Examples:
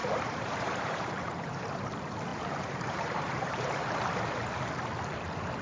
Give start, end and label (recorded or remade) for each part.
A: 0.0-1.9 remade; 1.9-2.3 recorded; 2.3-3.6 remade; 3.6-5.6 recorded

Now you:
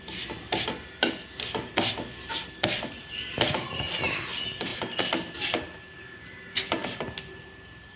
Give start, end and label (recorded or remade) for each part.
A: 0.0-8.0 recorded

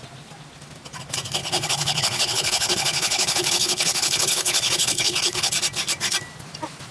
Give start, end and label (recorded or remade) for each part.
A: 0.0-1.4 recorded; 1.4-5.5 remade; 5.5-6.9 recorded

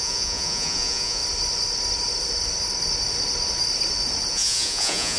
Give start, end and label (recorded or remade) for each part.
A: 0.0-1.2 remade; 1.2-4.3 recorded; 4.3-5.2 remade

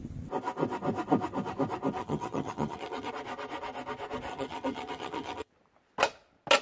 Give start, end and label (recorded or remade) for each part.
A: 0.0-2.0 recorded; 2.0-3.1 remade; 3.1-4.3 recorded; 4.3-5.5 remade; 5.5-6.6 recorded